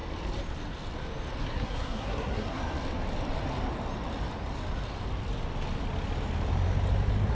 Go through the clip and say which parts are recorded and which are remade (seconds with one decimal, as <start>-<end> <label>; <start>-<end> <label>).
0.0-1.4 recorded; 1.4-2.6 remade; 2.6-7.3 recorded